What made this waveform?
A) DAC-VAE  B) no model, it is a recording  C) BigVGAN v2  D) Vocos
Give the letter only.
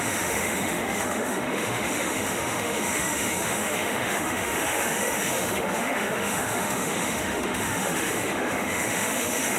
A